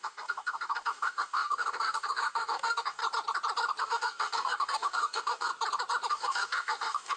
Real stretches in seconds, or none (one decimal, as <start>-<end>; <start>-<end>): 3.0-3.8; 5.5-6.1

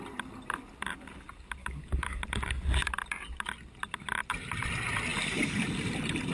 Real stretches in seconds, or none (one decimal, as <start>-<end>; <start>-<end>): 0.0-1.6; 2.2-6.3

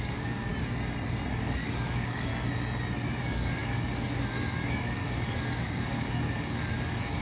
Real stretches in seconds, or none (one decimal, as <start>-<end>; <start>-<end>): 0.5-1.3; 2.3-3.2

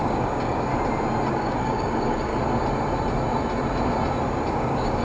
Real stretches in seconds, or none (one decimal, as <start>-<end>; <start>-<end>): 0.7-1.3; 2.3-4.5

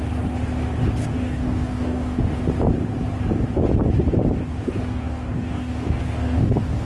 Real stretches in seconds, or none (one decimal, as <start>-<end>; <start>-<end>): 0.0-1.0; 2.4-4.4

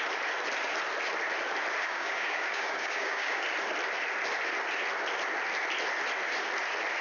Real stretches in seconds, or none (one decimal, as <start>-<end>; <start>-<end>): 0.0-1.8; 3.4-7.0

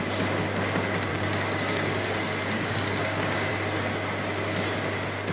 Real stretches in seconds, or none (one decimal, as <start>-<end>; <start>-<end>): 0.0-1.1; 3.5-5.3